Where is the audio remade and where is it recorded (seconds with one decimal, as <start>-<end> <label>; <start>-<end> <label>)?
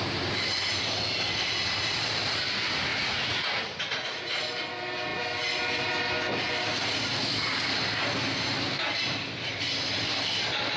0.0-2.9 recorded; 2.9-4.4 remade; 4.4-10.8 recorded